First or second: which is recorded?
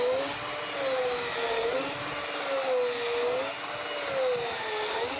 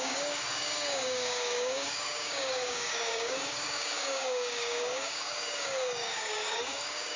first